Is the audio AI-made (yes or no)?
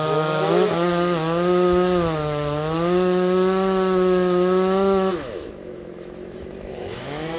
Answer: yes